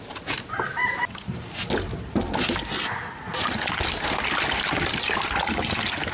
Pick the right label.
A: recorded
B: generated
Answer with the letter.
A